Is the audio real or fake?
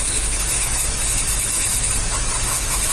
fake